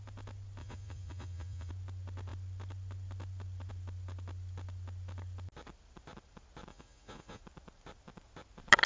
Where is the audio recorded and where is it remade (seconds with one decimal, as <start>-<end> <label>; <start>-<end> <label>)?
0.0-0.6 recorded; 0.6-1.7 remade; 1.7-6.7 recorded; 6.7-7.4 remade; 7.4-8.9 recorded